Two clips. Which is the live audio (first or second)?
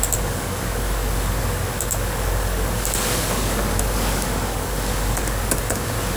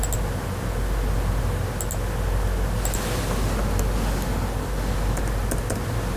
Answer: second